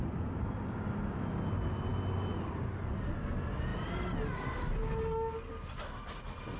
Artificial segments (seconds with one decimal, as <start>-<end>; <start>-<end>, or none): none